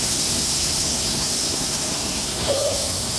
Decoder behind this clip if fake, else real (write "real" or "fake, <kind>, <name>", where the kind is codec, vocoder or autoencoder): fake, codec, SNAC